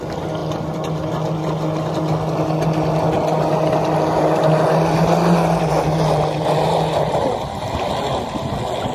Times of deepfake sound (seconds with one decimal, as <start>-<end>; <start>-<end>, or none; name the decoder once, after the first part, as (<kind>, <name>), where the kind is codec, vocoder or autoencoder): none